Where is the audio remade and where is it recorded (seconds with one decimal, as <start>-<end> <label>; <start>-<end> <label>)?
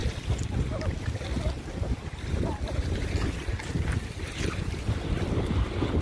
0.0-6.0 recorded